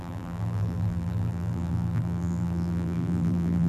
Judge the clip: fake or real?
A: fake